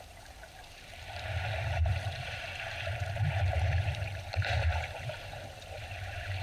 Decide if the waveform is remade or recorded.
remade